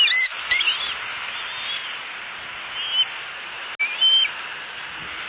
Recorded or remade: recorded